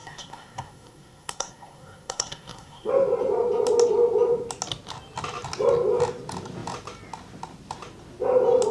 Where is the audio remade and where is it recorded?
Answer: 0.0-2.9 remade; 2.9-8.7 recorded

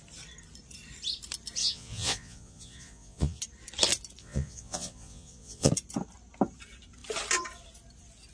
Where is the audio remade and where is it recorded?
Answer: 0.0-1.6 recorded; 1.6-3.4 remade; 3.4-4.2 recorded; 4.2-5.7 remade; 5.7-8.3 recorded

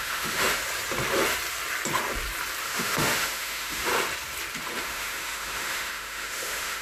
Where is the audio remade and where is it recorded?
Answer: 0.0-0.6 remade; 0.6-2.6 recorded; 2.6-3.9 remade; 3.9-4.8 recorded; 4.8-6.8 remade

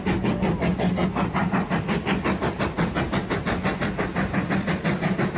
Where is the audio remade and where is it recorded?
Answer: 0.0-5.4 recorded

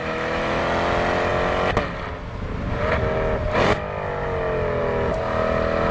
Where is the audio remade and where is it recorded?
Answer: 0.0-0.6 remade; 0.6-5.9 recorded

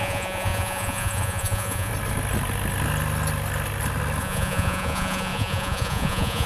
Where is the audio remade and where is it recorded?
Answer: 0.0-1.9 remade; 1.9-4.2 recorded; 4.2-6.5 remade

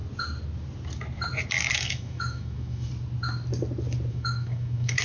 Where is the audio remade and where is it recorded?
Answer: 0.0-1.7 recorded; 1.7-2.9 remade; 2.9-4.1 recorded; 4.1-5.0 remade

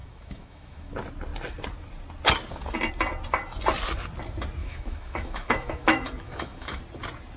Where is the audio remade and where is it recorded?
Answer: 0.0-0.9 remade; 0.9-4.6 recorded; 4.6-6.8 remade; 6.8-7.4 recorded